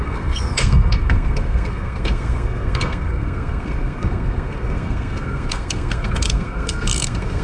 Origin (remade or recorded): remade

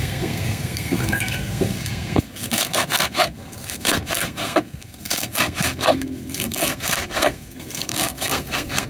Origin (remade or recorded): remade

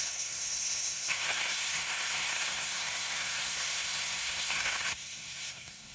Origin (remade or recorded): remade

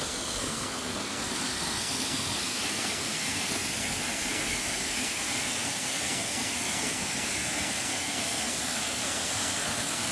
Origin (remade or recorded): remade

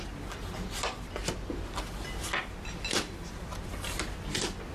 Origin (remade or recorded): recorded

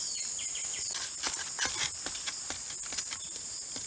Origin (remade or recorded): recorded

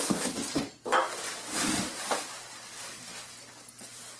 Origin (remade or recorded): recorded